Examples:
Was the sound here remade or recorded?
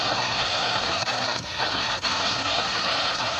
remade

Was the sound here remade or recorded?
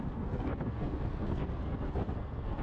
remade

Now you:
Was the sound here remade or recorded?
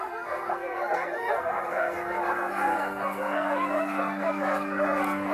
remade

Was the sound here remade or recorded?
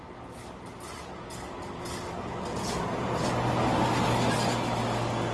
recorded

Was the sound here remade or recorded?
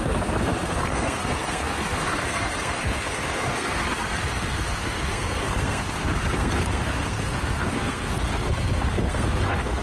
remade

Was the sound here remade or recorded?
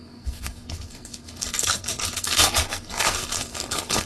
remade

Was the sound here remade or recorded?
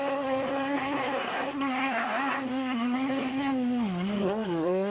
remade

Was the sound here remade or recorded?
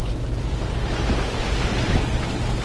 recorded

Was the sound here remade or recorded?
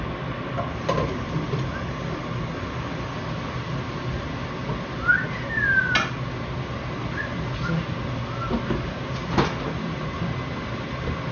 recorded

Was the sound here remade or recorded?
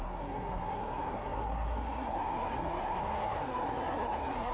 remade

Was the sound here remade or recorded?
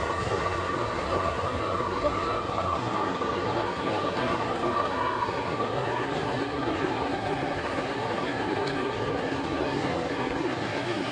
remade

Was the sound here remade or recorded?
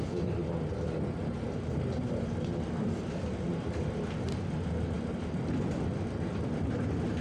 recorded